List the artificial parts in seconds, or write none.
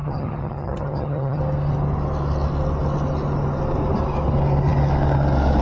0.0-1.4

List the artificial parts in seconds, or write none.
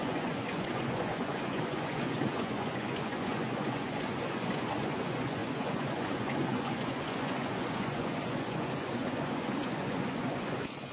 0.0-10.9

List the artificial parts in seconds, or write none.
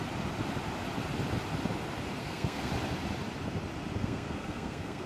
2.2-2.7; 4.0-5.1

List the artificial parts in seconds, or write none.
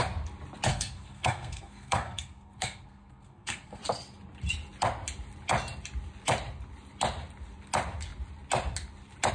0.7-3.8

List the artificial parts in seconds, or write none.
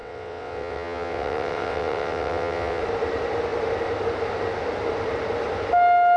0.0-2.8